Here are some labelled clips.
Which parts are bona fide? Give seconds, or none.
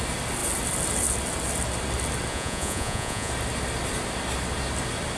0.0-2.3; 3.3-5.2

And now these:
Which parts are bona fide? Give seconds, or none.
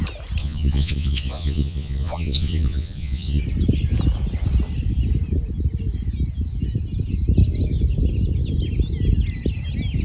0.0-0.4; 3.4-10.0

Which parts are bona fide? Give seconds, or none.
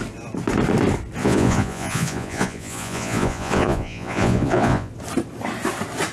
0.0-1.2; 4.9-6.1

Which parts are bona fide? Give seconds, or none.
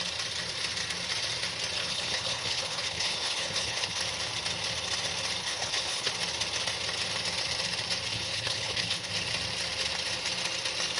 0.0-1.8; 4.0-5.4; 6.1-8.1; 9.1-11.0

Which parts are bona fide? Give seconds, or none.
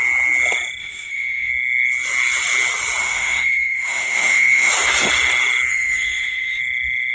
0.0-0.8; 1.5-3.0; 4.7-5.7; 6.6-7.1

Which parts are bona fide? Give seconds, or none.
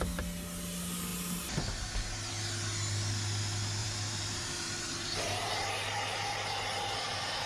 0.0-3.8; 5.7-7.5